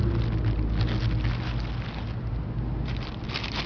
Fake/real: real